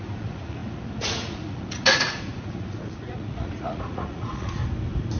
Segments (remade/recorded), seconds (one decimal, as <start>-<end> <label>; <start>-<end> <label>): 0.0-4.6 remade; 4.6-5.2 recorded